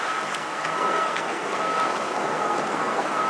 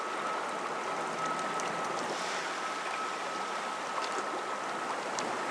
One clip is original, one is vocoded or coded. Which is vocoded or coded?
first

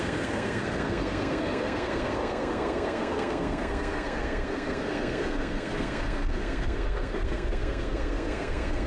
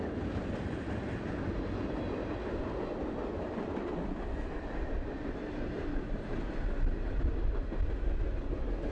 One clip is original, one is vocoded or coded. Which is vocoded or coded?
first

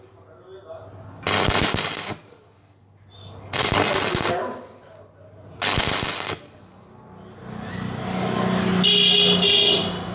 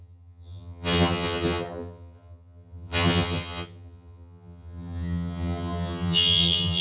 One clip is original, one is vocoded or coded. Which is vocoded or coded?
second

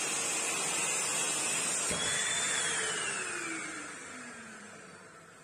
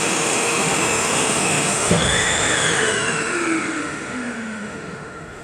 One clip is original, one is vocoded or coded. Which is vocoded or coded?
second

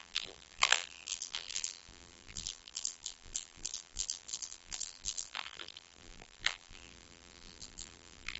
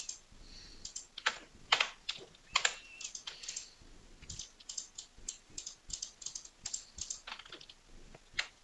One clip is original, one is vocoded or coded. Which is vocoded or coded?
first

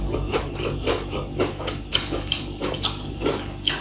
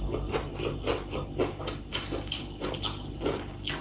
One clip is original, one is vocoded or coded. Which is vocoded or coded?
first